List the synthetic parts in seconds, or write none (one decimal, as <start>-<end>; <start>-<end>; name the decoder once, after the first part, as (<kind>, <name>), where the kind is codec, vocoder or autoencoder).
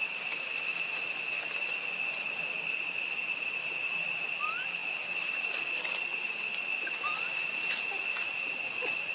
none